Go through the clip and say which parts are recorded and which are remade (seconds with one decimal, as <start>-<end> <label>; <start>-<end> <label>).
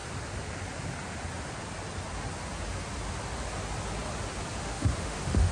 0.0-4.6 recorded; 4.6-5.5 remade